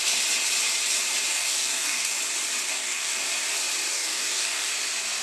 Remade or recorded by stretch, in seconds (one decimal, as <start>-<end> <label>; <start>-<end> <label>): 0.0-1.3 recorded; 1.3-2.2 remade; 2.2-2.7 recorded; 2.7-3.2 remade; 3.2-3.9 recorded; 3.9-4.7 remade; 4.7-5.2 recorded